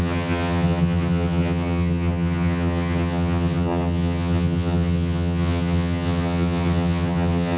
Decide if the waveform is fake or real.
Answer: fake